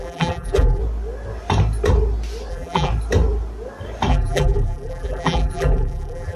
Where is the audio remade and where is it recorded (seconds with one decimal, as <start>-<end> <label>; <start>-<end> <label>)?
0.0-0.8 remade; 0.8-2.5 recorded; 2.5-2.9 remade; 2.9-4.1 recorded; 4.1-6.4 remade